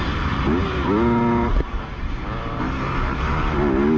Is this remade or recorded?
recorded